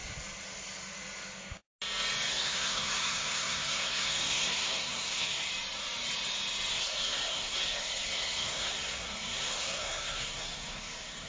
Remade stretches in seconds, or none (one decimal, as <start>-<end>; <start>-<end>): 2.3-5.5; 6.7-11.3